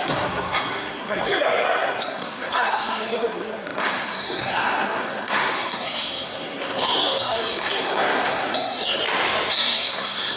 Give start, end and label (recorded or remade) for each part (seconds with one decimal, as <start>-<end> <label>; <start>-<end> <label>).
0.0-9.0 remade; 9.0-9.5 recorded; 9.5-10.4 remade